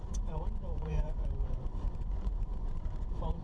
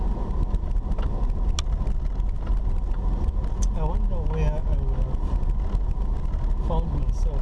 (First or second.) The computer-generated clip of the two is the first